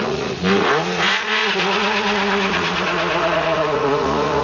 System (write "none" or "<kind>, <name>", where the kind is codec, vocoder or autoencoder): vocoder, Vocos